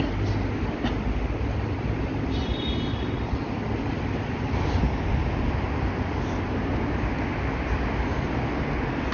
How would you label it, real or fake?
real